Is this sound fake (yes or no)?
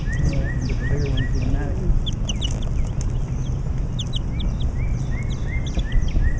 no